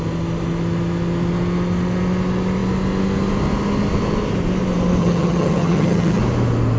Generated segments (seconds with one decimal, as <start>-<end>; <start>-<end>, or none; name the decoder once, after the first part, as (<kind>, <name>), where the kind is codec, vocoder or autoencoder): 5.0-6.2 (vocoder, HiFi-GAN)